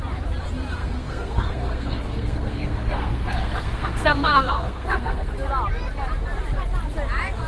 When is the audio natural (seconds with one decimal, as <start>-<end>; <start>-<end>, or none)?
0.0-0.8; 5.3-7.5